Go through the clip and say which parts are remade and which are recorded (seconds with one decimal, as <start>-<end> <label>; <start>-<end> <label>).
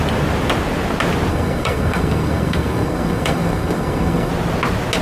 0.0-1.3 recorded; 1.3-4.3 remade; 4.3-5.0 recorded